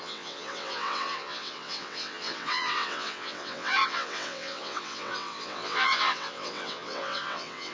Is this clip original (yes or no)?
no